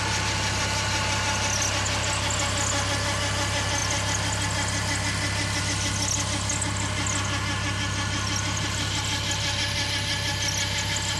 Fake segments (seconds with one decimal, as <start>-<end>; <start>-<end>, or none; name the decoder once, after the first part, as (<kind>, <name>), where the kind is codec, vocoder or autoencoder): none